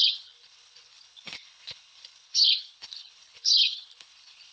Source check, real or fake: fake